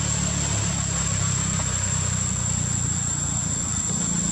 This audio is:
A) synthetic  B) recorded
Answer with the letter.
B